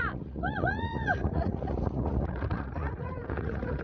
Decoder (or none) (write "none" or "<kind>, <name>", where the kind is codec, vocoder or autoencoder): vocoder, Vocos